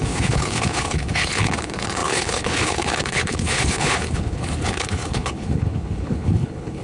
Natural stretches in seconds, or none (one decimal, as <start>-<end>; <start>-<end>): none